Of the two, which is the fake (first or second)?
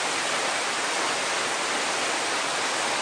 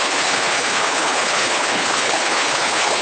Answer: second